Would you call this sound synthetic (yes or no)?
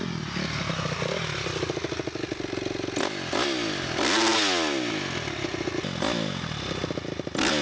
no